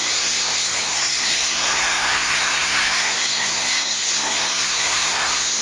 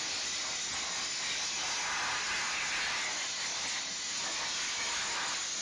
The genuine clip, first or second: second